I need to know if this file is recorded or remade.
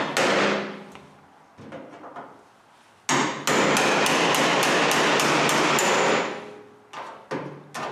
recorded